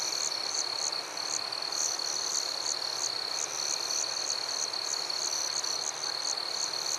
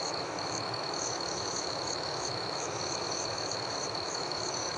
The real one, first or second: first